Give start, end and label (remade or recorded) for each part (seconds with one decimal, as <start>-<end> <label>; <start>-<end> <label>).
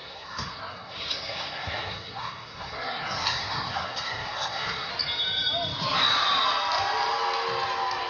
0.0-4.9 remade; 4.9-8.1 recorded